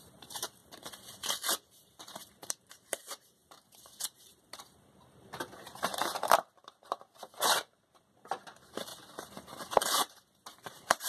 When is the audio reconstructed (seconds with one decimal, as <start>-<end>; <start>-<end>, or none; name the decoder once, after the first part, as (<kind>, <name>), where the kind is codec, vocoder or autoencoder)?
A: 0.0-0.6 (vocoder, BigVGAN v2); 1.7-8.9; 9.8-11.1